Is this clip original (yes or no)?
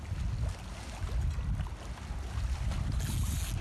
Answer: yes